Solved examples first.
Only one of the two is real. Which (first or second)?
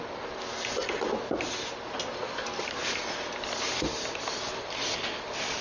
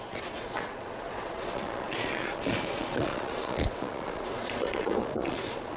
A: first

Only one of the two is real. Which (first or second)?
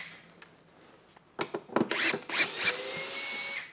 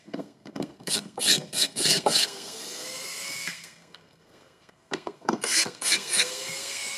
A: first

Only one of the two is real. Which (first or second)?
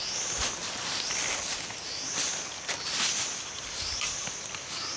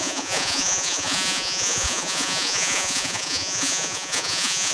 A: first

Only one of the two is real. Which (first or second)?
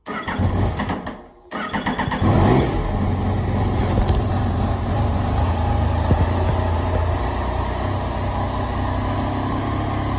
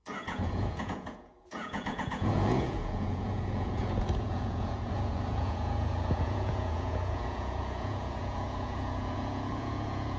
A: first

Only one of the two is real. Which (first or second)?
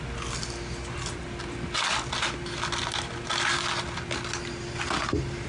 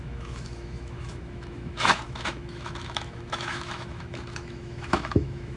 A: first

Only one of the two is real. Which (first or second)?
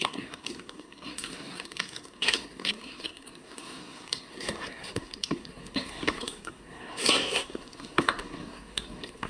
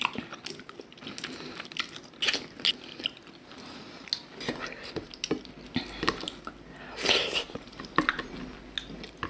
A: second